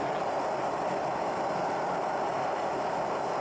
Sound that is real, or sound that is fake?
real